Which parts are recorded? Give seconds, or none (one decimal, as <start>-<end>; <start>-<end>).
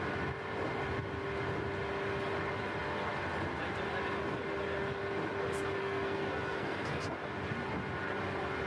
0.0-5.8; 7.2-8.7